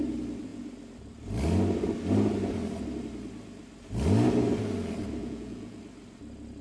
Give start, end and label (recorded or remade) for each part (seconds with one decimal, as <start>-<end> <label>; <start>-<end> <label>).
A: 0.0-5.2 recorded; 5.2-5.8 remade; 5.8-6.6 recorded

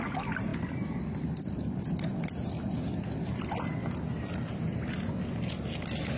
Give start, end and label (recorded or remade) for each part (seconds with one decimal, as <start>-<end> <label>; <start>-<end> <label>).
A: 0.0-6.2 recorded

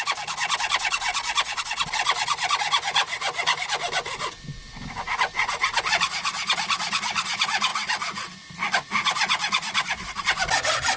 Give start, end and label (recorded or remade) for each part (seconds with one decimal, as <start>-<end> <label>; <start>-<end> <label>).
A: 0.0-1.1 recorded; 1.1-1.6 remade; 1.6-7.7 recorded; 7.7-10.2 remade; 10.2-11.0 recorded

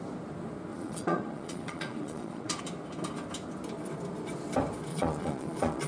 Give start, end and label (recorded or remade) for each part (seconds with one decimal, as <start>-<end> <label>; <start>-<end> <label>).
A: 0.0-0.7 recorded; 0.7-2.6 remade; 2.6-4.9 recorded; 4.9-5.9 remade

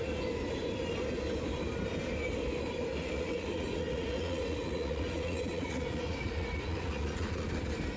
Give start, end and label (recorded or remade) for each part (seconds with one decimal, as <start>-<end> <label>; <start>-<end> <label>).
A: 0.0-3.0 recorded; 3.0-7.6 remade; 7.6-8.0 recorded